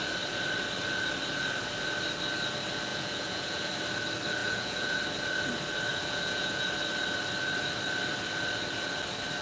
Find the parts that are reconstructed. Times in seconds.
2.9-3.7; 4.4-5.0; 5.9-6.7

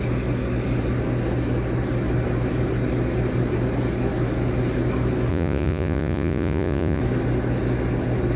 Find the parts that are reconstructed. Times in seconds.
5.3-7.0